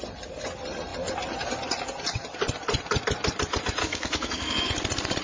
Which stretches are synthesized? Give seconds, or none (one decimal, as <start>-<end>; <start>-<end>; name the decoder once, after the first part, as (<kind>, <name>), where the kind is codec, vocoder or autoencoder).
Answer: 3.8-4.7 (codec, SNAC)